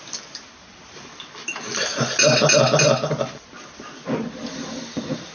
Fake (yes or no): no